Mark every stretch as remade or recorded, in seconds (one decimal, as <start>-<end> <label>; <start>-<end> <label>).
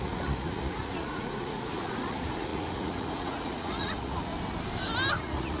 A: 0.0-4.3 remade; 4.3-5.1 recorded; 5.1-5.6 remade